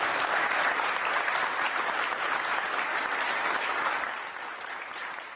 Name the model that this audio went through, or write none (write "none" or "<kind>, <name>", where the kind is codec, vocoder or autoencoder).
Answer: none